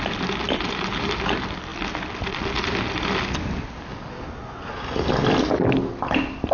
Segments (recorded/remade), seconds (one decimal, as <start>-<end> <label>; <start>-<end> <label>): 0.0-4.1 recorded; 4.1-4.7 remade; 4.7-6.5 recorded